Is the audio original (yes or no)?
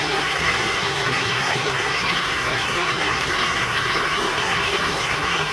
no